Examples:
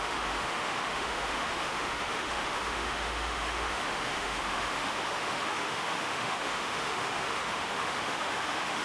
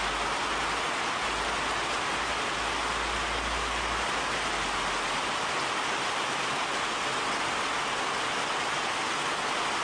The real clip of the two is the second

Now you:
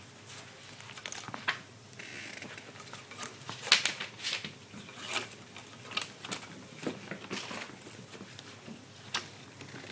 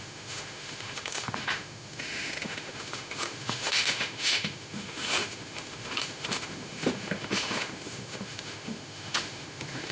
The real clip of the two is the first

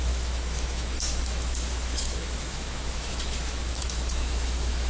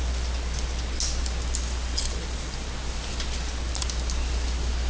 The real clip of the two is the second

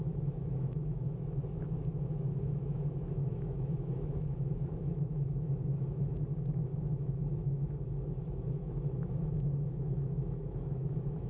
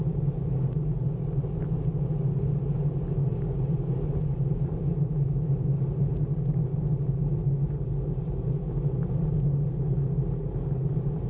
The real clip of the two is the second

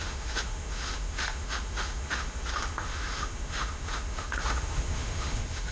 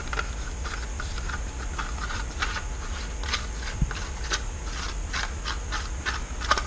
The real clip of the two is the second